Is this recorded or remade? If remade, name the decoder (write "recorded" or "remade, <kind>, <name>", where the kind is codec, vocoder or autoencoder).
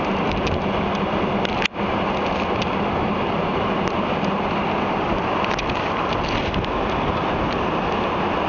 recorded